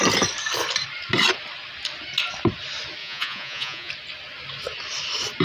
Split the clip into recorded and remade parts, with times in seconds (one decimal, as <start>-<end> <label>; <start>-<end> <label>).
0.0-3.0 recorded; 3.0-3.9 remade; 3.9-5.4 recorded